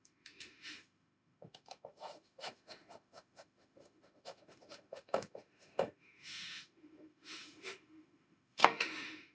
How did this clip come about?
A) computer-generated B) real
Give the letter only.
A